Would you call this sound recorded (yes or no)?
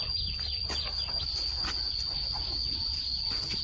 yes